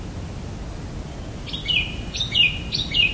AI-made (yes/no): no